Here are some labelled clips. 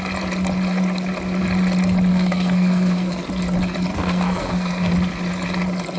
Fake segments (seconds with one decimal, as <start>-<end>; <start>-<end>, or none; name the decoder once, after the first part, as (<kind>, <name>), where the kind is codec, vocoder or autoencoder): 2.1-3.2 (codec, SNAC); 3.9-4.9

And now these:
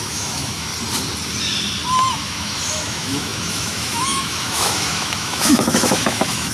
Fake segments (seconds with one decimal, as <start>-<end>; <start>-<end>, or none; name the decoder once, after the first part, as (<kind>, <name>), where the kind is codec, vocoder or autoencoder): 0.0-0.7 (autoencoder, DAC-VAE); 2.1-6.5

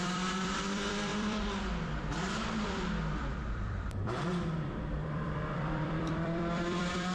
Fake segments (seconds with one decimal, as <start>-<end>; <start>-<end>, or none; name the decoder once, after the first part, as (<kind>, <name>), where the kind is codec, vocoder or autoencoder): 0.0-7.1 (vocoder, BigVGAN v2)

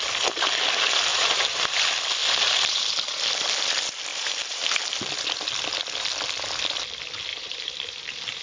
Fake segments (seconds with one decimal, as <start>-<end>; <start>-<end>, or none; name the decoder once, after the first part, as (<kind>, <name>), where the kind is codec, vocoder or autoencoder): 1.1-1.7 (vocoder, BigVGAN v2); 2.2-2.9; 4.1-5.1; 7.3-8.4

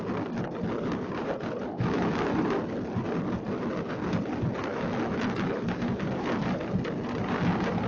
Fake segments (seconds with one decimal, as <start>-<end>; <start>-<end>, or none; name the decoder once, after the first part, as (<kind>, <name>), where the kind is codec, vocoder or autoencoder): 1.7-2.4 (autoencoder, DAC-VAE); 4.7-5.6